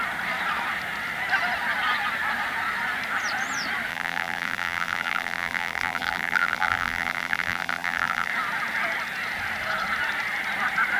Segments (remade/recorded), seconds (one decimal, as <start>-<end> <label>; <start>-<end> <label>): 0.0-3.9 recorded; 3.9-8.3 remade; 8.3-11.0 recorded

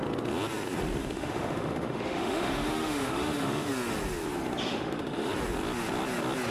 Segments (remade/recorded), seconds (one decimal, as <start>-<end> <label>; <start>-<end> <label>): 0.0-1.0 recorded; 1.0-3.7 remade; 3.7-4.7 recorded; 4.7-5.3 remade; 5.3-6.5 recorded

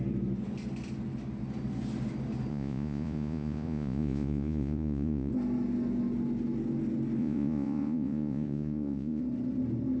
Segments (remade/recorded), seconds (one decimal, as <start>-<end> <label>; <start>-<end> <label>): 0.0-2.5 recorded; 2.5-5.3 remade; 5.3-7.2 recorded; 7.2-9.2 remade; 9.2-10.0 recorded

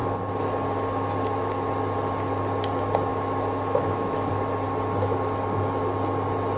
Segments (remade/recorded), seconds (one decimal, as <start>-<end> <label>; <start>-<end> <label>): 0.0-3.1 recorded; 3.1-4.3 remade; 4.3-6.6 recorded

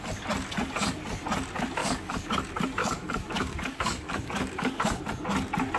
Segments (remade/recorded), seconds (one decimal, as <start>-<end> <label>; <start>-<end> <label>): 0.0-1.8 recorded; 1.8-2.3 remade; 2.3-2.8 recorded; 2.8-5.0 remade; 5.0-5.8 recorded

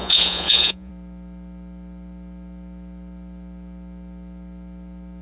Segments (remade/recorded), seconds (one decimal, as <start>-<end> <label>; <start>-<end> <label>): 0.0-0.9 remade; 0.9-5.2 recorded

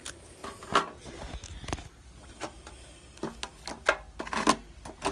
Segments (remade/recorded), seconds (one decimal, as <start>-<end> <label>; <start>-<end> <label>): 0.0-5.1 recorded